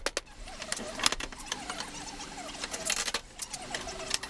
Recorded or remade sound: recorded